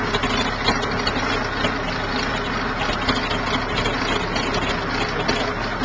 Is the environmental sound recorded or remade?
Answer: recorded